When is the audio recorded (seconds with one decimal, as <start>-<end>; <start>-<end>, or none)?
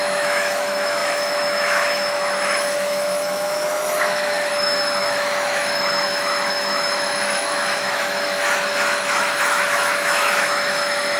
none